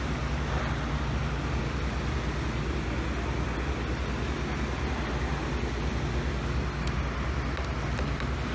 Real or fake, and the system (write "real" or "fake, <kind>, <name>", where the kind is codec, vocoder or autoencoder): real